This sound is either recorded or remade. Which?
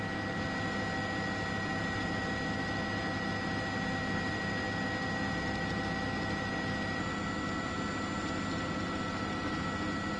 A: recorded